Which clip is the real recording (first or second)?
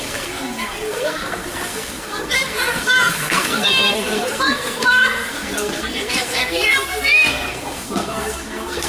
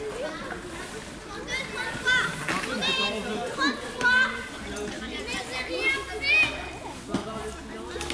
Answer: second